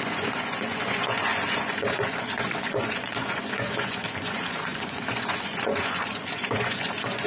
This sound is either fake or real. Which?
fake